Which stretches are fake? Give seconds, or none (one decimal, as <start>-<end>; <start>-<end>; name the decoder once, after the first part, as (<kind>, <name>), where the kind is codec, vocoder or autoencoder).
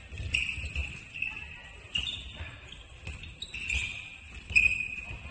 none